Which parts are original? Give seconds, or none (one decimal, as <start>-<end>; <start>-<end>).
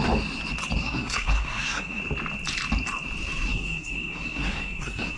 0.0-0.8; 2.0-3.5